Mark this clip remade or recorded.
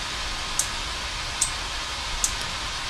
recorded